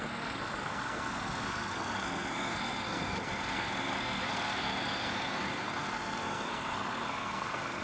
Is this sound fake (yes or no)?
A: yes